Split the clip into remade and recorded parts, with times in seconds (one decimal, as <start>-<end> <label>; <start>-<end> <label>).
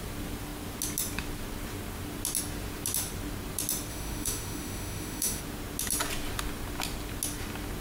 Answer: 0.0-3.9 recorded; 3.9-5.4 remade; 5.4-7.8 recorded